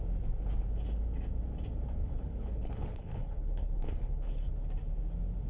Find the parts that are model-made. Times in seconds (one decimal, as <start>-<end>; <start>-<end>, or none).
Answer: 2.0-4.5